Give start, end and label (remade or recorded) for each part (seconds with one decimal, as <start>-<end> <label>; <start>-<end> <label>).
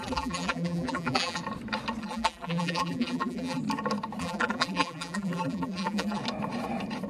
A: 0.0-1.4 remade; 1.4-2.0 recorded; 2.0-3.6 remade; 3.6-4.2 recorded; 4.2-6.2 remade; 6.2-7.1 recorded